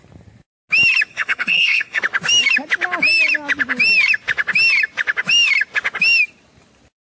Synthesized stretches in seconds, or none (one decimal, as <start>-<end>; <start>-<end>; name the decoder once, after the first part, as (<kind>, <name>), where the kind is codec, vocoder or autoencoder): 1.1-2.0 (codec, SNAC)